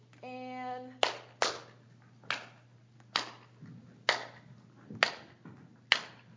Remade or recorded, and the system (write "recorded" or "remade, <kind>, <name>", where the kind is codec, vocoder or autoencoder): recorded